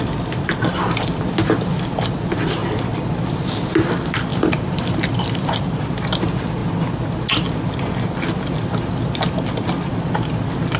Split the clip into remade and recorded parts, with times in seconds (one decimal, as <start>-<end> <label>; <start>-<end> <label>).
0.0-4.3 recorded; 4.3-5.9 remade; 5.9-10.8 recorded